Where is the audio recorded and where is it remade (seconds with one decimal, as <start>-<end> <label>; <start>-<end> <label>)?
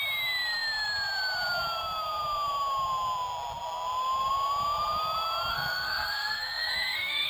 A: 0.0-5.5 recorded; 5.5-7.3 remade